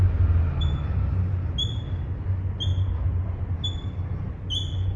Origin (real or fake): real